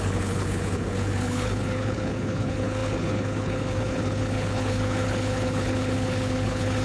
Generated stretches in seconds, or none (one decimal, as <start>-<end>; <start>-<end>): 0.0-6.8